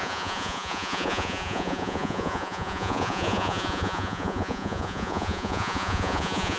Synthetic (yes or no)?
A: yes